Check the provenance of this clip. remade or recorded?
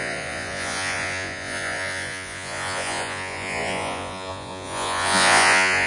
remade